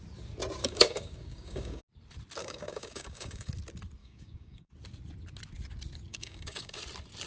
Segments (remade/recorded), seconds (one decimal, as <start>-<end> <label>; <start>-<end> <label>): 0.0-0.6 recorded; 0.6-1.8 remade; 1.8-2.4 recorded; 2.4-3.5 remade; 3.5-4.0 recorded; 4.0-4.7 remade; 4.7-6.1 recorded; 6.1-6.8 remade; 6.8-7.3 recorded